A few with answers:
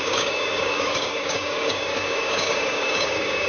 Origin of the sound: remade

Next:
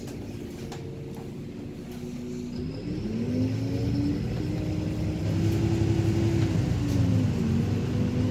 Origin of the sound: recorded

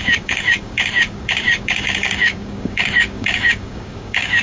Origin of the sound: remade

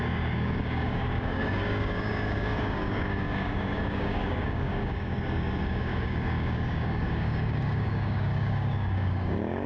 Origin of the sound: remade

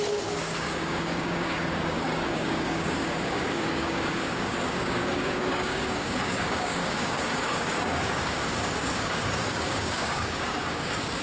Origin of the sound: remade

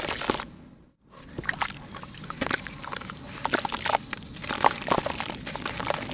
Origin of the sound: recorded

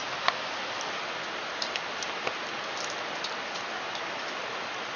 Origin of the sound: recorded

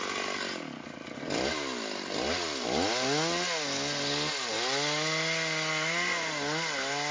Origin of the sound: recorded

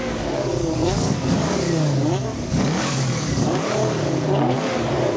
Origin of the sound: remade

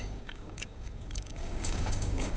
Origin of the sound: remade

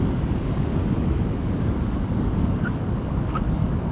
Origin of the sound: remade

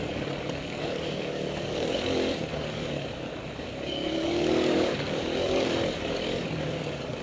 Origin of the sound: remade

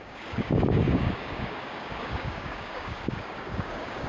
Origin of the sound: remade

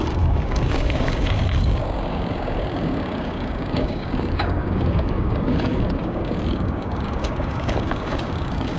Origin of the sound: remade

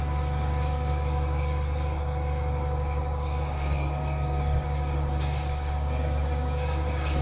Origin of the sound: remade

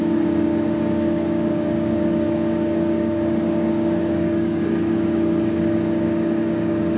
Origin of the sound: remade